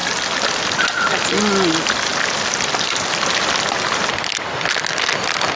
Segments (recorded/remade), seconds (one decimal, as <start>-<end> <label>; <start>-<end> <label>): 0.0-2.1 recorded; 2.1-4.2 remade; 4.2-5.6 recorded